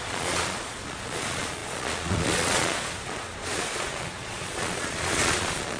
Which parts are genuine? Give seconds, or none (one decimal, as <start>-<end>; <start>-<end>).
none